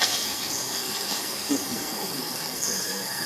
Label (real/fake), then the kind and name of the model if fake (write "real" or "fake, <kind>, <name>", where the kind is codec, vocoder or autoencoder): fake, codec, SNAC